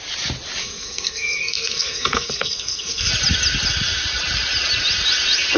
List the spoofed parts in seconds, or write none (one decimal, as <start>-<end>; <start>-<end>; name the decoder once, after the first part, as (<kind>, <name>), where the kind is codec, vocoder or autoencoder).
0.6-3.1 (codec, SNAC)